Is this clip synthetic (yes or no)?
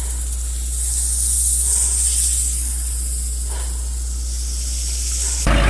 no